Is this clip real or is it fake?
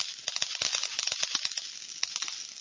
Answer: real